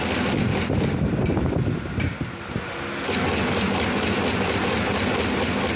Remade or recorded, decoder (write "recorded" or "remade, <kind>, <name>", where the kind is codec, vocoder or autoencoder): recorded